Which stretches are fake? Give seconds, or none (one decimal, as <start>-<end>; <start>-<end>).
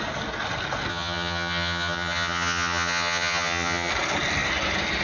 0.9-3.9